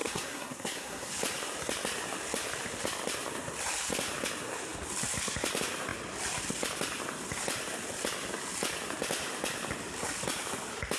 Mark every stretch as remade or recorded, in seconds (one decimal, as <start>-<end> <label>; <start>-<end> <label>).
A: 0.0-1.1 remade; 1.1-11.0 recorded